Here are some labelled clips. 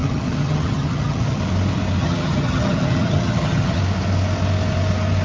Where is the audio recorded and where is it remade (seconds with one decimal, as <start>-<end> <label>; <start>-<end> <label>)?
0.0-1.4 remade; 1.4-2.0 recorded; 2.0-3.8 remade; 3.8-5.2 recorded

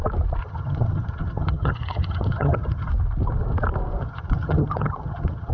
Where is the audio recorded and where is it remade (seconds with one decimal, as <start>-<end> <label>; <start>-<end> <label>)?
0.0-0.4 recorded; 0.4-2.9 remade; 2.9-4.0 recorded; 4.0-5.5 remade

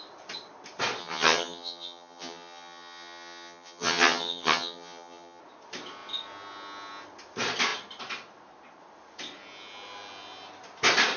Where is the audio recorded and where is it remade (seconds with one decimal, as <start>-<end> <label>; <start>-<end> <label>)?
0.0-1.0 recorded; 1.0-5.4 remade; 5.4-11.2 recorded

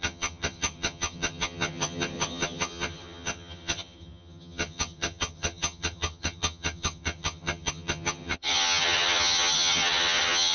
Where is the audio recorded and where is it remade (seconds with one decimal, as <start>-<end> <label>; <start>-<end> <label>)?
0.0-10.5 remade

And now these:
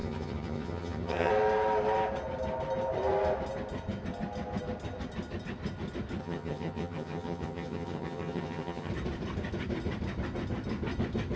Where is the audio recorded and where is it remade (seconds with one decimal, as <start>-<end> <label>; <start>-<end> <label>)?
0.0-1.3 remade; 1.3-6.2 recorded; 6.2-8.9 remade; 8.9-11.4 recorded

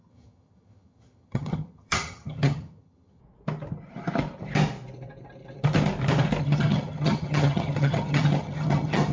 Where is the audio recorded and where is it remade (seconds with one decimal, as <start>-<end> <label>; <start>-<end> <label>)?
0.0-3.2 remade; 3.2-6.4 recorded; 6.4-9.1 remade

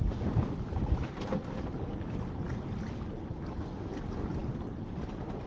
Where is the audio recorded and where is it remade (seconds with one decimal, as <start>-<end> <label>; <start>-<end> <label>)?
0.0-5.5 recorded

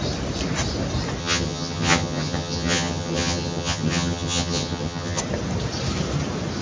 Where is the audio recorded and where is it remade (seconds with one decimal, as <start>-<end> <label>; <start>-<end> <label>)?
0.0-1.2 recorded; 1.2-5.2 remade; 5.2-6.6 recorded